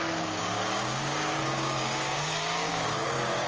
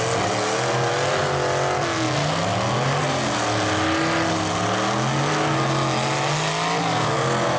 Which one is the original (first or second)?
second